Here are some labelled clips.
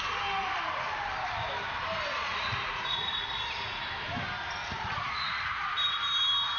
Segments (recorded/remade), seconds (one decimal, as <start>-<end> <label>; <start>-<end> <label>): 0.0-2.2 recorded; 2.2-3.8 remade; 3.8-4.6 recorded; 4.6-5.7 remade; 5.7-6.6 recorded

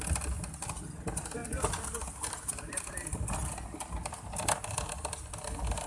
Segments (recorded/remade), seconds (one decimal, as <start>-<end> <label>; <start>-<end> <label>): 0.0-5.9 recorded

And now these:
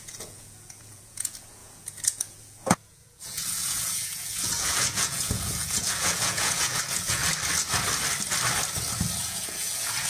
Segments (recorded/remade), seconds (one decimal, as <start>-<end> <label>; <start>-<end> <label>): 0.0-7.2 remade; 7.2-9.2 recorded; 9.2-10.1 remade